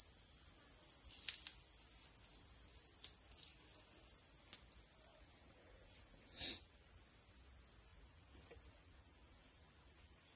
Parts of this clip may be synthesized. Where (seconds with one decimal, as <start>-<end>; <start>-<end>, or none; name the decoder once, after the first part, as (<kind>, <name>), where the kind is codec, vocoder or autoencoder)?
5.1-7.0 (vocoder, Vocos); 7.9-10.4